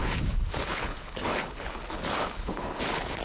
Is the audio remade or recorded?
remade